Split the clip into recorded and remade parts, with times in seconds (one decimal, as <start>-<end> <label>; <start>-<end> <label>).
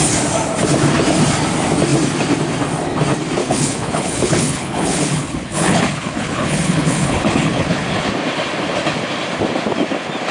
0.0-3.4 recorded; 3.4-8.1 remade; 8.1-10.3 recorded